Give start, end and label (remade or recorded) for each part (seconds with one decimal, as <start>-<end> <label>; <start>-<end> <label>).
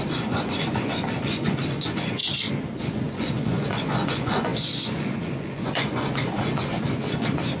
0.0-2.2 remade; 2.2-2.8 recorded; 2.8-7.6 remade